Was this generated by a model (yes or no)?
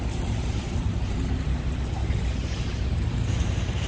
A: yes